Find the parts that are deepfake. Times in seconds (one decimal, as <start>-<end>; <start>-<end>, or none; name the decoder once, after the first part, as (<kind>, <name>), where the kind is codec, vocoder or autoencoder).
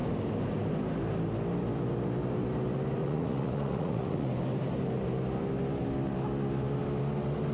3.0-4.3 (vocoder, Vocos)